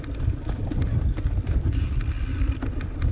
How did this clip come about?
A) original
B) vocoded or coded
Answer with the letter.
B